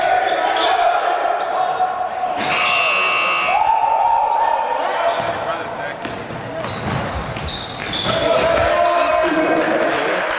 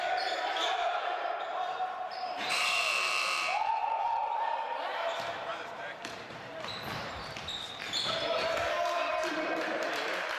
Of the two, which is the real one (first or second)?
first